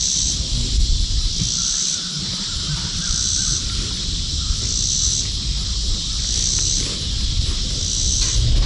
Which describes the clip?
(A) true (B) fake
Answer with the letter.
A